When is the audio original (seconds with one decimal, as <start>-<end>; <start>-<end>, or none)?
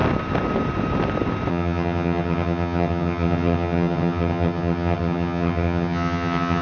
0.0-1.5